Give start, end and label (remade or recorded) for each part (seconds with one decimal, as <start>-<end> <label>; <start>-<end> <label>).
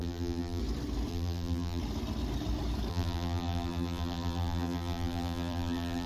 0.0-0.6 remade; 0.6-1.1 recorded; 1.1-1.8 remade; 1.8-2.9 recorded; 2.9-6.1 remade